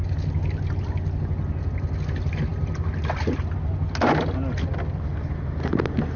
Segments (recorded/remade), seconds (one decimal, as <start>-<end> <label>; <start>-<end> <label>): 0.0-6.2 recorded